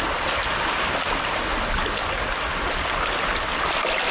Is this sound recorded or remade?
recorded